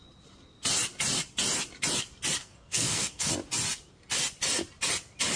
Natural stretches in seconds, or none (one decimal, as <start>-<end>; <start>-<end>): 0.0-2.4; 3.3-5.4